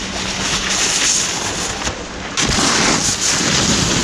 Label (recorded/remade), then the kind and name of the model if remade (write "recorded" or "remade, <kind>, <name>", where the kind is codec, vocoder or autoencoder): recorded